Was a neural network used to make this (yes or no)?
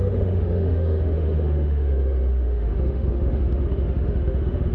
yes